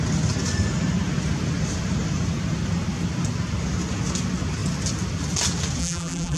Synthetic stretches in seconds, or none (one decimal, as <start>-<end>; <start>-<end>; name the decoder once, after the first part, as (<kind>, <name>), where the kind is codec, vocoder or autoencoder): 5.8-6.4 (vocoder, BigVGAN v2)